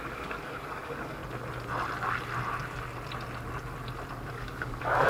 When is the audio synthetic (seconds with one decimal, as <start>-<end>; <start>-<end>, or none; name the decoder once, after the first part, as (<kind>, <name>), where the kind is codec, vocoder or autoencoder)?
0.0-1.2 (codec, DAC); 4.3-5.1